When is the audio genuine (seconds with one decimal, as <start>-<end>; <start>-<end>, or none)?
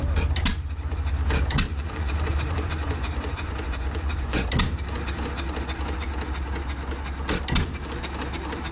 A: 0.0-1.7; 4.5-8.7